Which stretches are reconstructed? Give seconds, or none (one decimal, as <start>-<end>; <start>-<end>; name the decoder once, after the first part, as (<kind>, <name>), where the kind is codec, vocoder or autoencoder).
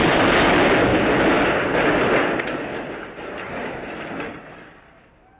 0.0-0.9 (vocoder, BigVGAN v2); 4.1-5.4